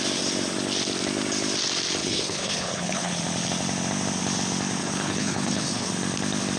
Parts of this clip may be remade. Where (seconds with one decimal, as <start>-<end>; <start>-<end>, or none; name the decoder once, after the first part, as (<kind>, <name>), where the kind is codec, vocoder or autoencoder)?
2.0-3.1 (codec, HILCodec); 4.8-5.9